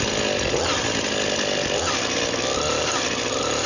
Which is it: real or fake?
real